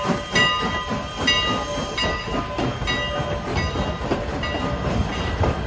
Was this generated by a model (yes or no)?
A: no